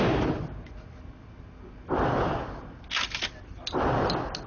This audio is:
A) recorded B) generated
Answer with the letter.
A